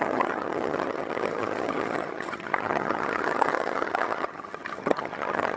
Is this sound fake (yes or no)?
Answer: yes